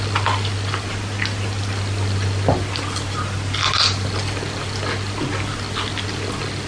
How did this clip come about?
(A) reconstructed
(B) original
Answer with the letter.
B